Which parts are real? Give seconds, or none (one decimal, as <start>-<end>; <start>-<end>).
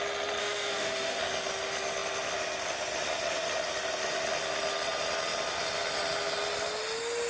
0.0-0.4; 1.2-7.3